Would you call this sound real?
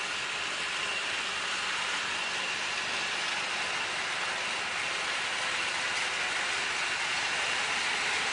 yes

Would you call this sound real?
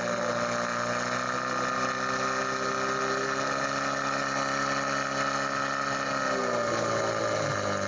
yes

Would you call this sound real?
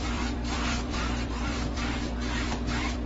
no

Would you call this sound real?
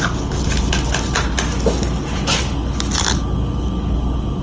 yes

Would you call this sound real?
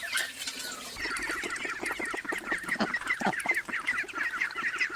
yes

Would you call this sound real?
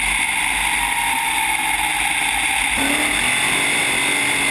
yes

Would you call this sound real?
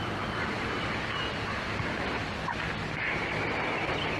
yes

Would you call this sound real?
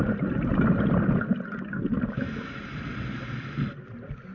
yes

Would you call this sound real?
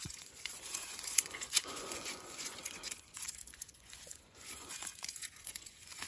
no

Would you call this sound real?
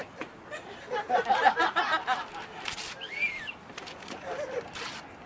yes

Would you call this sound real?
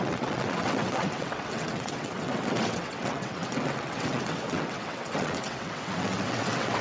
no